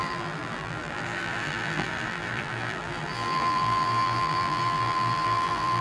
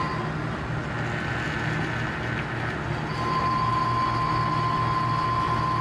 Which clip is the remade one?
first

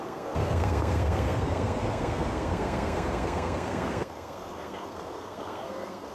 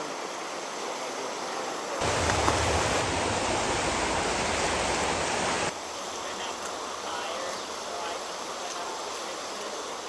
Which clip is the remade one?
first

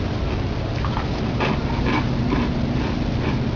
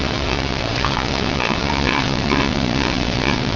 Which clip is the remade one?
second